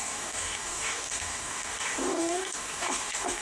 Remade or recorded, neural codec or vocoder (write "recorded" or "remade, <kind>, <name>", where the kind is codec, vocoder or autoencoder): remade, codec, DAC